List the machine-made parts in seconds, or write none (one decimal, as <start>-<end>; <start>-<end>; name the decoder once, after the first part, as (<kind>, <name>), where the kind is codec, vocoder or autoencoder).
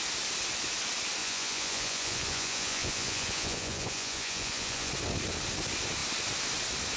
1.2-4.9 (vocoder, Vocos)